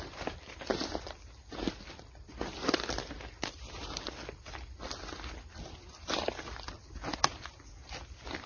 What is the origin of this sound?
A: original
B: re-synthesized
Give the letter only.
A